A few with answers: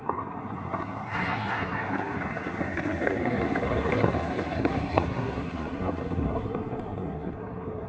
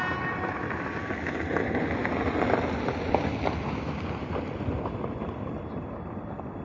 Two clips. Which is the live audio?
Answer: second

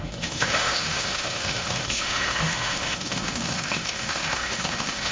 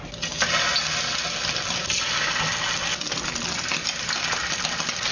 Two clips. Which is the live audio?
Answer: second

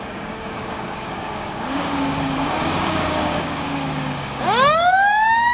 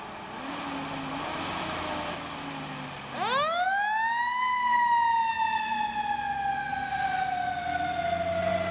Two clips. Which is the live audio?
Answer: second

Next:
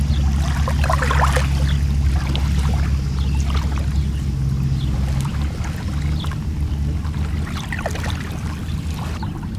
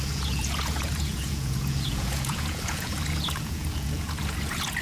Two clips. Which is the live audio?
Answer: first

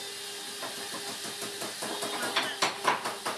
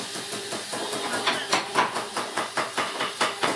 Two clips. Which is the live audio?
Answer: first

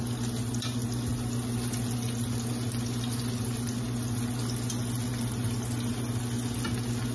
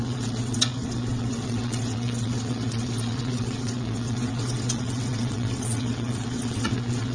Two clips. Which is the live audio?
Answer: first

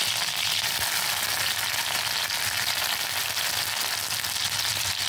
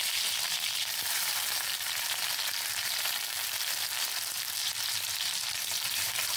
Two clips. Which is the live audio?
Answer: first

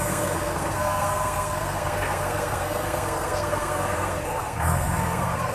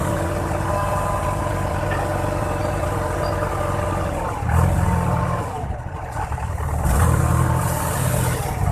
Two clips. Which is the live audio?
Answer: second